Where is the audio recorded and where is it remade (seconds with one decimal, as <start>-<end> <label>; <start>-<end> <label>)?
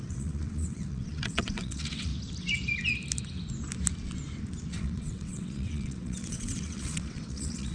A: 0.0-2.1 remade; 2.1-4.7 recorded; 4.7-7.7 remade